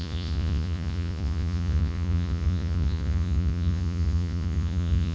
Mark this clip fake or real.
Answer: fake